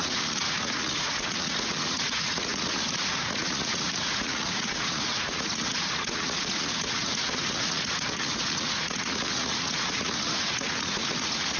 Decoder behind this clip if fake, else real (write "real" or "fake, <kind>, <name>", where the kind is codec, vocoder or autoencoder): fake, vocoder, Vocos